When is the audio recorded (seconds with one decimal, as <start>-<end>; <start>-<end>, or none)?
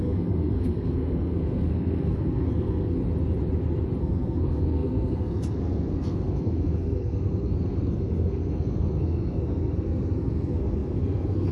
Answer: 3.0-4.0